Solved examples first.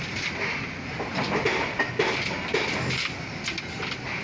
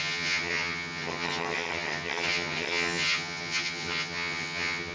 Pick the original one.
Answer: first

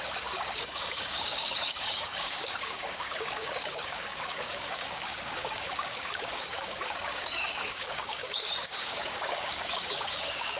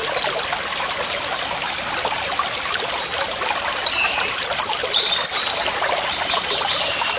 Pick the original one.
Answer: second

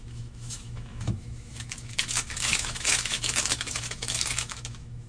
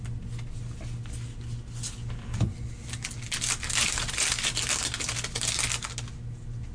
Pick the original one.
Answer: second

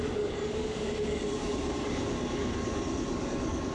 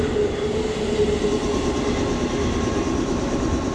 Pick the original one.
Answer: second